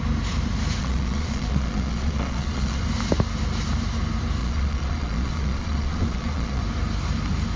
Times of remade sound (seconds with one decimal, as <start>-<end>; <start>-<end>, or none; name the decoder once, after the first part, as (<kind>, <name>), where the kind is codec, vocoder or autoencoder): 0.8-2.8 (vocoder, Vocos); 4.4-6.6